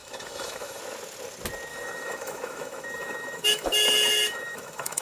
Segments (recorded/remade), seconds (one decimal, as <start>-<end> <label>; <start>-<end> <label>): 0.0-0.8 remade; 0.8-1.7 recorded; 1.7-5.0 remade